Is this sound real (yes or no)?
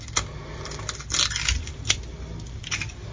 yes